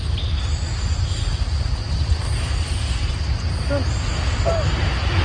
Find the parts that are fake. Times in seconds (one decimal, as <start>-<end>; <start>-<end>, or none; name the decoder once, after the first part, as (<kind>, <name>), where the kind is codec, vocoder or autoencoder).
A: 4.1-4.7 (codec, DAC)